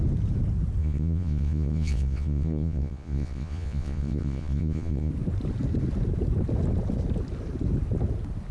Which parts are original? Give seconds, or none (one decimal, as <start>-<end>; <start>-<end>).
0.0-0.8; 5.1-8.5